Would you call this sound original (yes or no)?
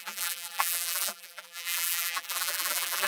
no